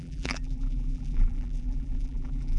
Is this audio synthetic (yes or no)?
yes